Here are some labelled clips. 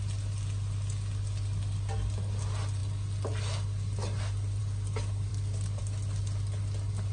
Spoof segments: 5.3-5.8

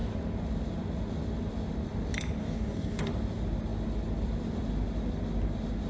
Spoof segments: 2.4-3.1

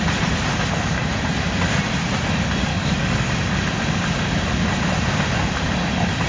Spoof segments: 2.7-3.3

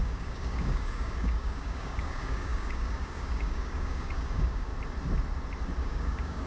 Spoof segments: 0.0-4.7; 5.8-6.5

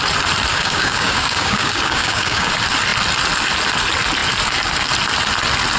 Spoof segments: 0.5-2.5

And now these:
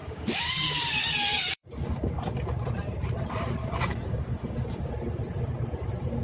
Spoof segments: 0.0-2.2; 3.6-4.9